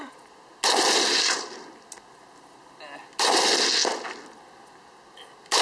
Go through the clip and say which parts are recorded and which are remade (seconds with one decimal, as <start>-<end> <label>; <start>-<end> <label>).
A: 0.0-5.6 recorded